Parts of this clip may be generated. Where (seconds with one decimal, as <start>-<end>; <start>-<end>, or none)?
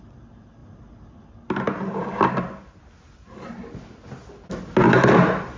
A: none